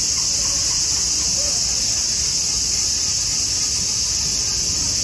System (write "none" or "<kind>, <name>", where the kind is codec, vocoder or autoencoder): none